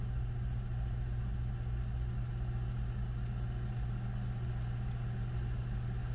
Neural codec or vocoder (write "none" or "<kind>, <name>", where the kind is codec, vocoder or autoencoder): none